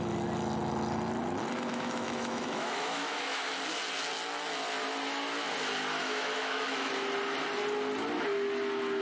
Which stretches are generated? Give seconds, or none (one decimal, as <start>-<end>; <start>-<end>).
1.7-3.5; 6.0-6.9